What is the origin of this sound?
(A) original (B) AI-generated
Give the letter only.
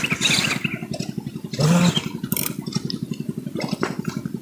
A